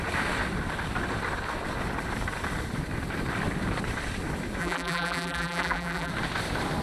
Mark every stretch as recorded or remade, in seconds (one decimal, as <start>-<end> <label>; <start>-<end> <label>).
0.0-4.6 recorded; 4.6-6.1 remade; 6.1-6.8 recorded